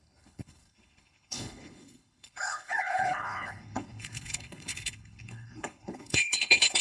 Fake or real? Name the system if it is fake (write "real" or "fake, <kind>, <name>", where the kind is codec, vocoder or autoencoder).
fake, codec, HILCodec